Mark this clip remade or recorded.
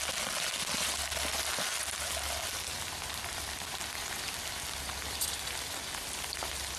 recorded